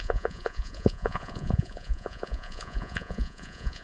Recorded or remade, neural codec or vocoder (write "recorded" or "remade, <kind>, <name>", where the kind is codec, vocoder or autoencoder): remade, vocoder, Vocos